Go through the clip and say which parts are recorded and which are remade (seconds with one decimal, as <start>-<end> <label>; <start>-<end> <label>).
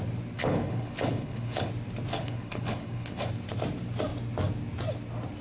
0.0-0.4 recorded; 0.4-1.7 remade; 1.7-2.1 recorded; 2.1-3.3 remade; 3.3-5.4 recorded